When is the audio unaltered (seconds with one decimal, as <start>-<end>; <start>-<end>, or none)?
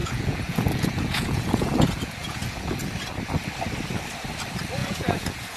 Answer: 2.9-4.8